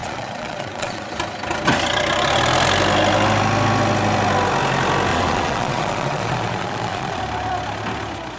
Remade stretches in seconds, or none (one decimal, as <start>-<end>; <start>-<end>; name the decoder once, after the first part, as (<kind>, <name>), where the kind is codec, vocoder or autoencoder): 0.0-1.1 (vocoder, Vocos); 5.1-7.2